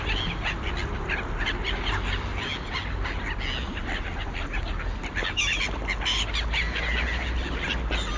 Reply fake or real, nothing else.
real